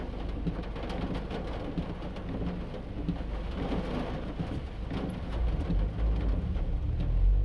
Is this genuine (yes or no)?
yes